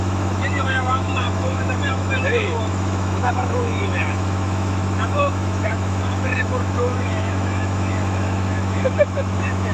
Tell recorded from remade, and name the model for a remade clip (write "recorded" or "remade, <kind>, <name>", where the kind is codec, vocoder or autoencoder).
remade, autoencoder, DAC-VAE